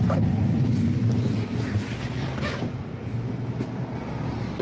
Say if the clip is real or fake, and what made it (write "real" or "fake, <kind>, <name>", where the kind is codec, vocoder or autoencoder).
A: real